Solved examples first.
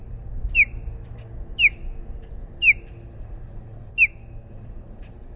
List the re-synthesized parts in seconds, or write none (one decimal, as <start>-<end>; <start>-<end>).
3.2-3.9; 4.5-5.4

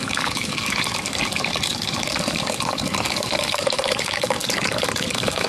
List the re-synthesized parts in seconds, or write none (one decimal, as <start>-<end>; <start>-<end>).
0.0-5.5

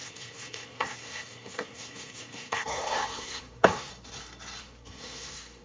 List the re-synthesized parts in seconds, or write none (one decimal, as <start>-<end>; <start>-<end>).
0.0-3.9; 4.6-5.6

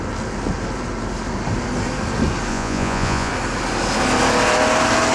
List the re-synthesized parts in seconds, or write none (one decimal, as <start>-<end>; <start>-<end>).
2.5-3.3

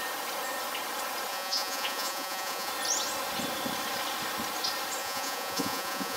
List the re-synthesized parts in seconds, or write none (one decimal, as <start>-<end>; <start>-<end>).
1.3-2.7; 5.0-6.2